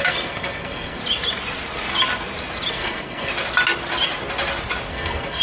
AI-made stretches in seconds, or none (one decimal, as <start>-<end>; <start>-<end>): 0.0-1.0; 2.7-3.3; 4.9-5.4